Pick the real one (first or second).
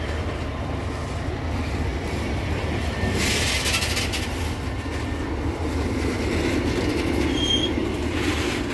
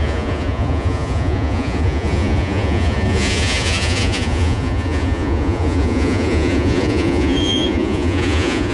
first